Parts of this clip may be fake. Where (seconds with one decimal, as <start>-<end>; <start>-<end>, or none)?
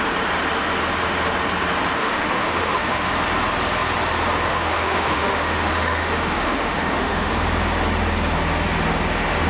2.0-3.1; 4.5-7.3